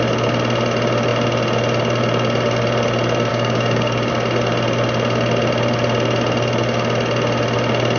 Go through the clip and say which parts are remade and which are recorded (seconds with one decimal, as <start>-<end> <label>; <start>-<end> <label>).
0.0-3.3 recorded; 3.3-4.1 remade; 4.1-8.0 recorded